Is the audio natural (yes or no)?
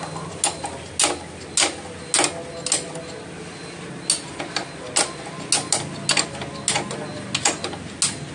yes